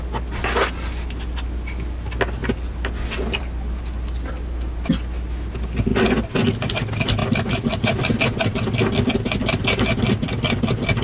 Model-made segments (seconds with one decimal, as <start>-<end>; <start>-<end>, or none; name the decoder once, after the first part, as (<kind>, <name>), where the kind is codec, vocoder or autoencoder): none